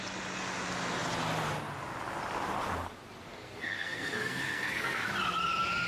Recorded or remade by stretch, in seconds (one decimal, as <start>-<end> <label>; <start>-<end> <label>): 0.0-3.3 recorded; 3.3-5.1 remade; 5.1-5.9 recorded